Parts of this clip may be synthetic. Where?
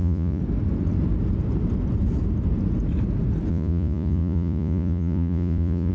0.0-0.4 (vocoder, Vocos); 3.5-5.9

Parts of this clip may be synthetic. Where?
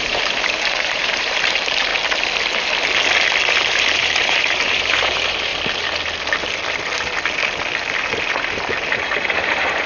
0.0-1.9 (vocoder, BigVGAN v2); 3.5-5.5; 8.9-9.9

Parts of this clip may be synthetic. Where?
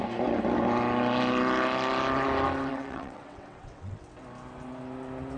2.7-4.0 (vocoder, WaveNeXt)